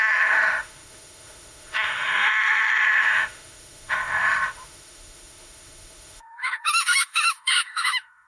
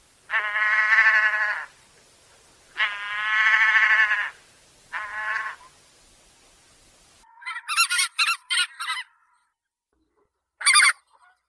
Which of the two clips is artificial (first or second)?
first